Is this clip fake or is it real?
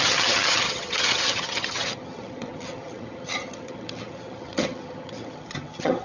fake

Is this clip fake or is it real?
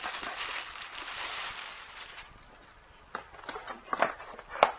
real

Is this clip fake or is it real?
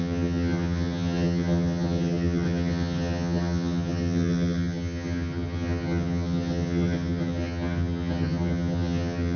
fake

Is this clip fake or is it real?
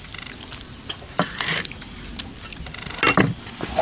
real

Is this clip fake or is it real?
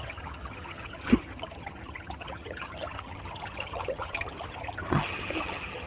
fake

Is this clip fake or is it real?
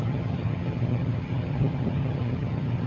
fake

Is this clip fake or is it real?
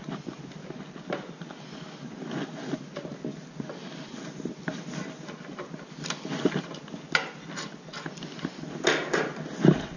real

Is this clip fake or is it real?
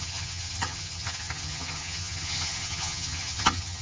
fake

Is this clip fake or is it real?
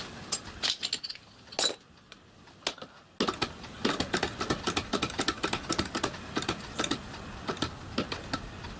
real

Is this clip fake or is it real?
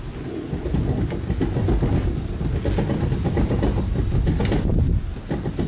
real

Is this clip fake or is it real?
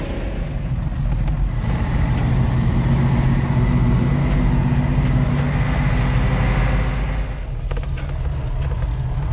real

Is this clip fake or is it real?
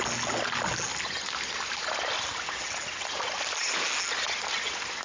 real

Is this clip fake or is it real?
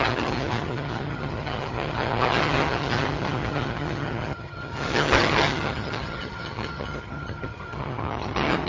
fake